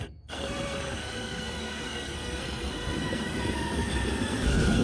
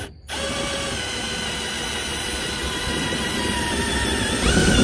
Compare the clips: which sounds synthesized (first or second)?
first